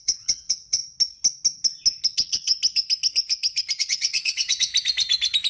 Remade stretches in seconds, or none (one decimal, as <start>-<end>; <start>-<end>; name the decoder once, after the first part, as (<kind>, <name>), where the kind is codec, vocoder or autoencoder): 0.0-0.8 (vocoder, WaveNeXt); 2.1-2.5; 3.8-4.7